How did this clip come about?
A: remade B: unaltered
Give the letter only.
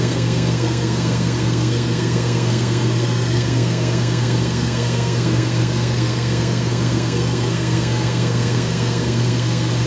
A